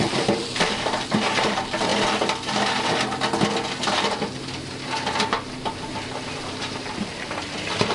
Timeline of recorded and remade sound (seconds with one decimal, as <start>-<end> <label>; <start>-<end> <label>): 0.0-1.9 remade; 1.9-6.6 recorded; 6.6-7.9 remade